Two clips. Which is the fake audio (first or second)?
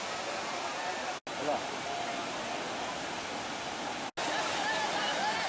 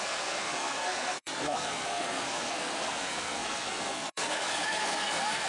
second